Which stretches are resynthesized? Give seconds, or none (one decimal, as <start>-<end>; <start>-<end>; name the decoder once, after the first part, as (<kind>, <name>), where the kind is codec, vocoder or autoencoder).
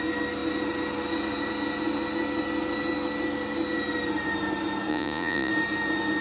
4.9-5.5 (vocoder, Vocos)